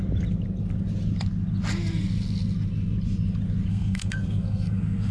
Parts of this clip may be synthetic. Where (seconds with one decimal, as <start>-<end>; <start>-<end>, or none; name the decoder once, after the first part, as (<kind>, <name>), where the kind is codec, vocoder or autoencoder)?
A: 3.7-5.1 (codec, SNAC)